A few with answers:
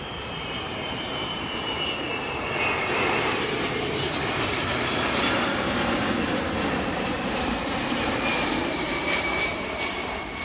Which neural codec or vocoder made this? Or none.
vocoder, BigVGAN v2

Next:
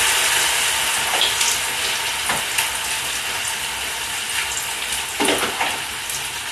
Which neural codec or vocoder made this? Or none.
none